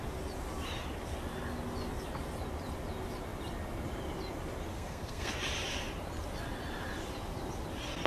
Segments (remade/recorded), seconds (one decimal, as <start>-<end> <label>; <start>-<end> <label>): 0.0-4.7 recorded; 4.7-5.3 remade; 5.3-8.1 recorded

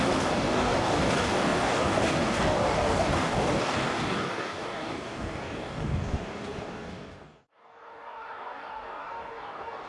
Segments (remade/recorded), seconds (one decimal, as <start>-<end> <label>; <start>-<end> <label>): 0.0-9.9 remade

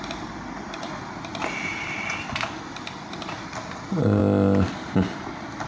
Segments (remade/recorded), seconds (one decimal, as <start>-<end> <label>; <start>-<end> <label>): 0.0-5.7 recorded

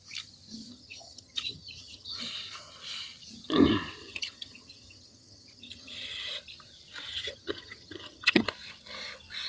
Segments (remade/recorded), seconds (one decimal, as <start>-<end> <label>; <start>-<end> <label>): 0.0-0.7 recorded; 0.7-2.2 remade; 2.2-4.0 recorded; 4.0-6.3 remade; 6.3-7.1 recorded; 7.1-8.5 remade; 8.5-9.5 recorded